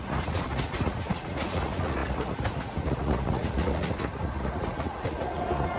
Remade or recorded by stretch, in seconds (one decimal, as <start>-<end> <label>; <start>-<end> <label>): 0.0-5.8 remade